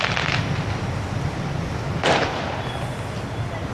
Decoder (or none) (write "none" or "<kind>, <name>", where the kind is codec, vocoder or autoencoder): none